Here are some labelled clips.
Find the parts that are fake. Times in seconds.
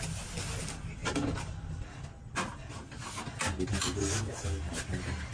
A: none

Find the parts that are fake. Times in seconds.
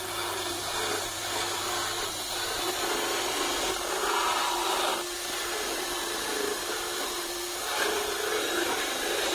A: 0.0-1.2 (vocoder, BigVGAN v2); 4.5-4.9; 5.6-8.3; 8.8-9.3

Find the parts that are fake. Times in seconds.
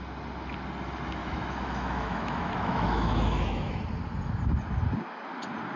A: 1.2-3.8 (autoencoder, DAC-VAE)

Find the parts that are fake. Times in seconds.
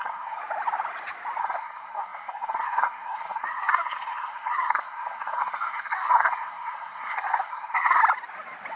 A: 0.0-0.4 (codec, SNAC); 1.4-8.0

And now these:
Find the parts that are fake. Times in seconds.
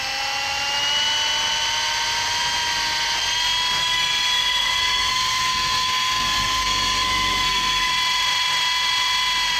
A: 3.8-7.9 (codec, SNAC)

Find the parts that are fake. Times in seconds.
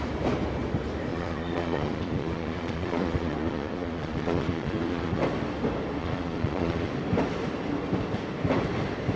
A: 1.1-5.2 (vocoder, Vocos); 6.0-6.9